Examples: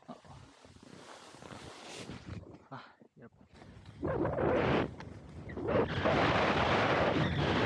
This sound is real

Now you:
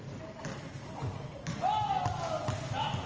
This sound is real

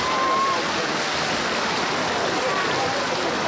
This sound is real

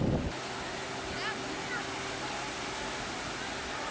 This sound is real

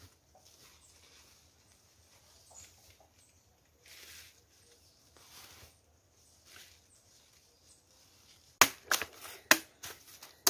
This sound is real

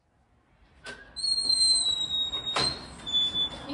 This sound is real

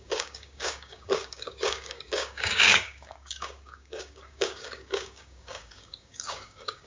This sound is fake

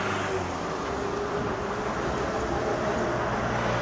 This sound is real